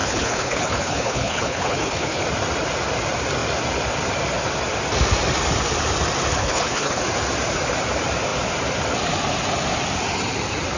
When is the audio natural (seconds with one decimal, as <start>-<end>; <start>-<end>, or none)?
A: 2.2-6.4; 7.0-10.8